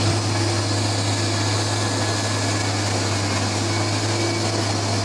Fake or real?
real